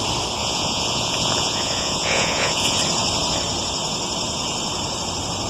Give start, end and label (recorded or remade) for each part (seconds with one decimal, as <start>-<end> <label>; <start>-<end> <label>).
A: 0.0-0.4 recorded; 0.4-2.8 remade; 2.8-5.5 recorded